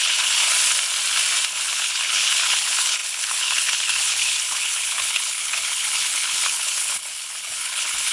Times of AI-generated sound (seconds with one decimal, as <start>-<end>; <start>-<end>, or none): 0.0-0.4; 1.5-8.1